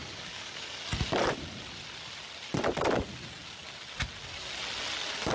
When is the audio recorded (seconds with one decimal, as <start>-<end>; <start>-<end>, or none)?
0.8-5.3